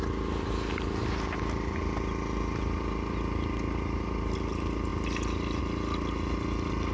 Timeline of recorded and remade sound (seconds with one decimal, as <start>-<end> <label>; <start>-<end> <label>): 0.0-6.9 recorded